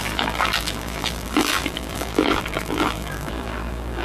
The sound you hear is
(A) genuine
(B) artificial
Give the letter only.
B